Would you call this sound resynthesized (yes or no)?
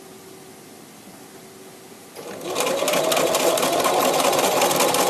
no